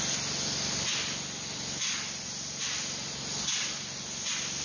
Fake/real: real